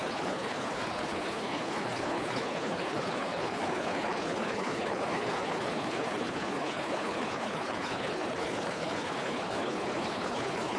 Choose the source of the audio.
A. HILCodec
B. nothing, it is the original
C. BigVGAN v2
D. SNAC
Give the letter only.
A